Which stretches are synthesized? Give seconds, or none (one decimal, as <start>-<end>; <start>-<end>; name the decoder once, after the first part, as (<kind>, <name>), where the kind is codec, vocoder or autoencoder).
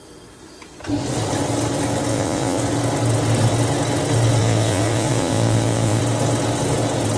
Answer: 2.1-2.6 (vocoder, Vocos); 4.4-6.0